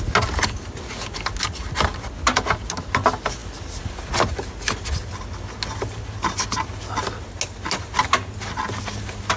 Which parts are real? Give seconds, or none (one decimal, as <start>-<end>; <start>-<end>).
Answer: 0.0-9.4